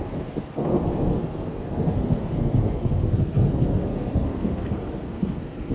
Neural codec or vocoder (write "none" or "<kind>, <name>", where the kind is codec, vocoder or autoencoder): codec, SNAC